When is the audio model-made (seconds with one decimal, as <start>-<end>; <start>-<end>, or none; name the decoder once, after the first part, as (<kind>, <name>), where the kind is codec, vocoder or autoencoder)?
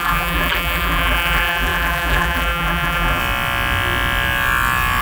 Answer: 0.0-3.2 (vocoder, BigVGAN v2)